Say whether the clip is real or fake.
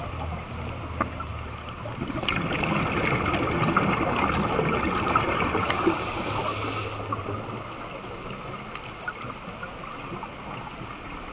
real